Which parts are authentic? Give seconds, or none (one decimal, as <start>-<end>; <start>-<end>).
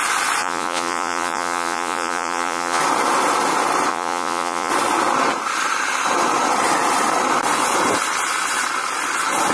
0.0-0.4; 2.8-3.9; 4.7-9.5